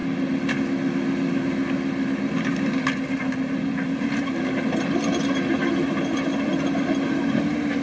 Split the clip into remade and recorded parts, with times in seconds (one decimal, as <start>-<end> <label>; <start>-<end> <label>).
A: 0.0-7.8 recorded